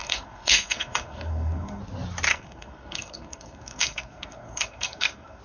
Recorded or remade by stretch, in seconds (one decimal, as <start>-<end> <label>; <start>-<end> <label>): 0.0-1.8 remade; 1.8-2.3 recorded; 2.3-5.4 remade